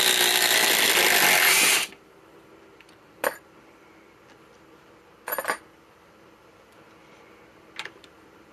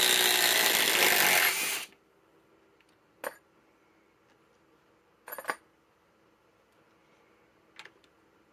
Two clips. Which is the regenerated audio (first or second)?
first